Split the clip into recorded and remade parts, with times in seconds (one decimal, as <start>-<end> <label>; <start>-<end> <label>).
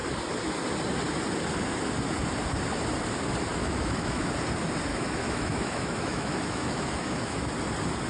0.0-3.5 recorded; 3.5-4.3 remade; 4.3-4.9 recorded; 4.9-7.5 remade; 7.5-8.1 recorded